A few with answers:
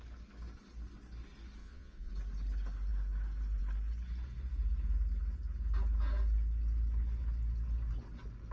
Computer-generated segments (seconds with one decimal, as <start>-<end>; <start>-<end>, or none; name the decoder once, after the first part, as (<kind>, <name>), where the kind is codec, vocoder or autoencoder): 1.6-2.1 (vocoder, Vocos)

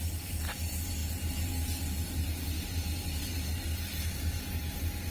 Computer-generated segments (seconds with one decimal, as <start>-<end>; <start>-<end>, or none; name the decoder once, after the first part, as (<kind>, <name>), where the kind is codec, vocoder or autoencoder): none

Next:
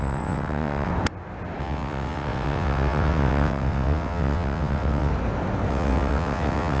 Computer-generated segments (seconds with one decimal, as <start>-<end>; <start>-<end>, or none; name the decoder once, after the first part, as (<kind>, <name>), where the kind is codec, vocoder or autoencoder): 0.0-0.9 (vocoder, WaveNeXt); 1.6-5.1; 5.7-6.8

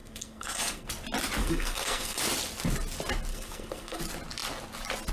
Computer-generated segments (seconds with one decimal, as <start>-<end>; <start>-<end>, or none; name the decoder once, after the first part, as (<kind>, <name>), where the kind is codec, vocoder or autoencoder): 0.0-0.9 (codec, SNAC); 1.4-2.2; 3.3-4.0

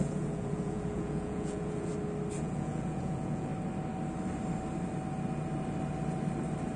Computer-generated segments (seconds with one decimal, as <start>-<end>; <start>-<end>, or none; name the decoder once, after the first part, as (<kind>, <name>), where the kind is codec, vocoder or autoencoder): 0.0-1.9 (vocoder, Vocos); 2.4-3.5